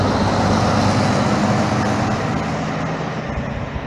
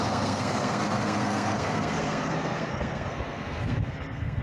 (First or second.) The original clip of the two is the first